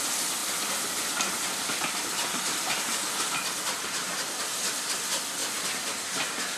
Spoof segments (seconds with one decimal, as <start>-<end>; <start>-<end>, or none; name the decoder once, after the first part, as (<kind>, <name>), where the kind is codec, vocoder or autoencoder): 0.4-4.4 (vocoder, BigVGAN v2); 5.4-6.6